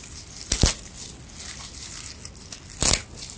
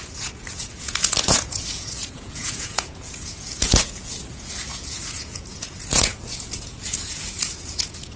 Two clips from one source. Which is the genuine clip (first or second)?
first